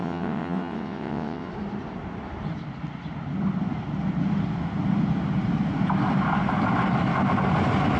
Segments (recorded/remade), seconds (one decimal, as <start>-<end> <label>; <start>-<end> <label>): 0.0-1.5 remade; 1.5-8.0 recorded